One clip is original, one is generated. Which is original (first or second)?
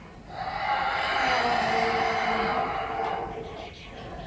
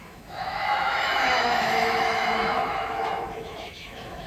first